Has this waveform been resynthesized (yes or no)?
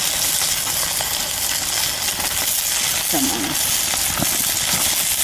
no